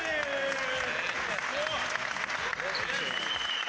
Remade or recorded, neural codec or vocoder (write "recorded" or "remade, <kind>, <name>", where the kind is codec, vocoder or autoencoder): recorded